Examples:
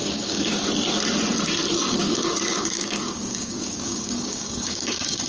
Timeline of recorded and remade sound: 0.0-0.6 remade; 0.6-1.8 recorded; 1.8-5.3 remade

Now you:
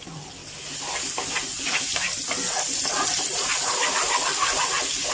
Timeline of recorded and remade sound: 0.0-5.1 recorded

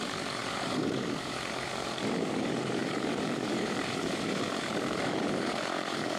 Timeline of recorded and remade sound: 0.0-6.2 remade

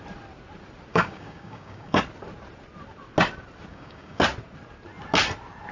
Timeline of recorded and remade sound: 0.0-0.9 recorded; 0.9-2.0 remade; 2.0-3.7 recorded; 3.7-4.2 remade; 4.2-5.7 recorded

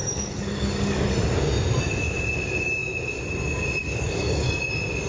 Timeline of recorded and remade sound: 0.0-1.1 remade; 1.1-3.8 recorded; 3.8-4.6 remade; 4.6-5.1 recorded

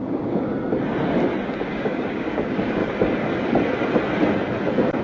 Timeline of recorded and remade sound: 0.0-0.5 remade; 0.5-1.6 recorded; 1.6-2.8 remade; 2.8-5.0 recorded